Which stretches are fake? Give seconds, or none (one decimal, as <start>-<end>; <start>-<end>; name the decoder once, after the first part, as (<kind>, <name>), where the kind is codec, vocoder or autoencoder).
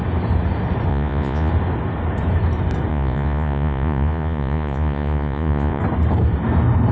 0.9-1.5 (vocoder, Vocos); 2.9-5.8